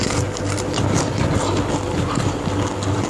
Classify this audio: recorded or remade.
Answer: recorded